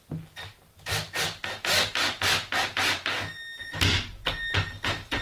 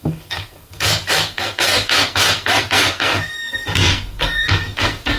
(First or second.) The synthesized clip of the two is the second